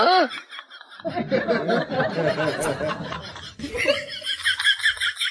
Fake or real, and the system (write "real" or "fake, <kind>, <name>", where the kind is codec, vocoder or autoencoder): real